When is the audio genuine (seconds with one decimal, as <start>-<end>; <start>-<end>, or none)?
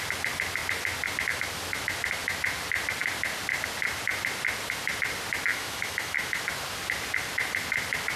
0.0-5.5; 6.4-8.2